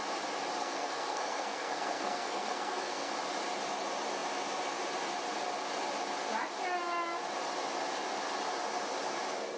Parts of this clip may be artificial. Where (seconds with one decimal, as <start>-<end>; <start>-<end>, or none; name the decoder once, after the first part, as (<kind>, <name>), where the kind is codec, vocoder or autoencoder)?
0.6-3.1 (codec, SNAC)